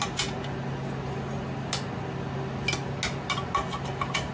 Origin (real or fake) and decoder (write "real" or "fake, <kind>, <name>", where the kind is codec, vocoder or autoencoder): real